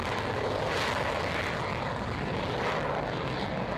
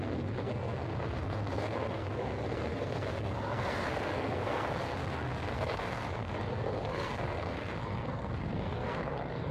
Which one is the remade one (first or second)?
second